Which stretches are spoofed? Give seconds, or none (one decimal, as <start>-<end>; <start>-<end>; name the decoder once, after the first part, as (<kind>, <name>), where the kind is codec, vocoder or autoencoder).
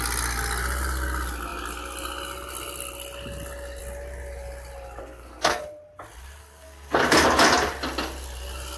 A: 5.0-5.6 (codec, SNAC); 6.4-7.0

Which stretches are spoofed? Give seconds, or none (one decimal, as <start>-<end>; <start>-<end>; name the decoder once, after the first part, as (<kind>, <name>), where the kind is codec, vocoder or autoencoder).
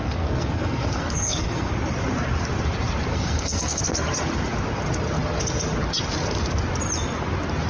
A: 0.0-1.7 (codec, SNAC); 3.1-3.8